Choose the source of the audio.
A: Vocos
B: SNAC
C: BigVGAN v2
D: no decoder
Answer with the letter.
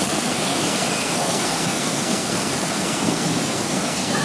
B